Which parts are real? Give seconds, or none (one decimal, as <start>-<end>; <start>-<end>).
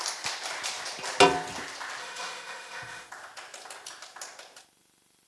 0.0-2.0; 3.1-5.3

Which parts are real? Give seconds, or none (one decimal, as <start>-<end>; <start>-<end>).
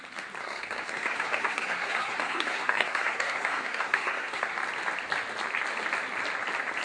0.0-0.4; 4.5-6.8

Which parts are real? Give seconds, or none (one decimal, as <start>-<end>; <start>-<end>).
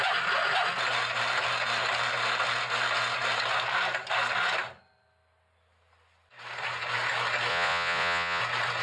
0.0-7.5; 8.4-8.8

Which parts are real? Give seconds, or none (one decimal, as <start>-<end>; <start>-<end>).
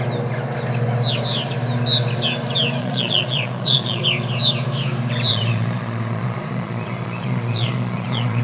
0.0-2.8; 4.0-5.3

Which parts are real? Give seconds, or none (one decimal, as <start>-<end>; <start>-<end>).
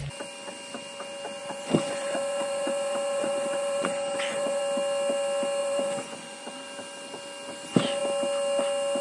0.0-1.4; 4.6-5.6; 6.5-9.0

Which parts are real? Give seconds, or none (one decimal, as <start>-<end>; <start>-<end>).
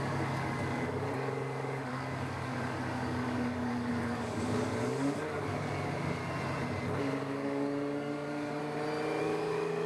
6.2-7.0; 8.6-9.2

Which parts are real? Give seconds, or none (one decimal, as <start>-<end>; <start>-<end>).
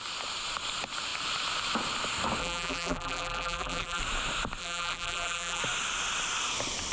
0.0-2.4; 4.0-4.6; 5.6-6.9